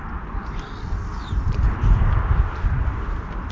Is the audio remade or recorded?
recorded